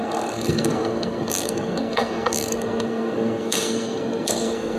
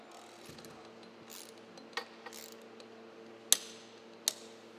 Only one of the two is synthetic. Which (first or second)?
first